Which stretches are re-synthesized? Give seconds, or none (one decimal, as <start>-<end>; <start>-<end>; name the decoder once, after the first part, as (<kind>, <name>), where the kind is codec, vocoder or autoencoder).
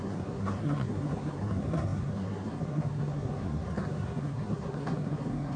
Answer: 0.0-5.6 (codec, SNAC)